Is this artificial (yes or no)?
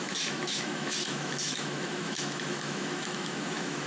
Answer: yes